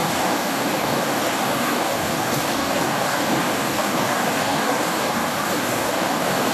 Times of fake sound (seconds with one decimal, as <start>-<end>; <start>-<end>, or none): 0.0-6.5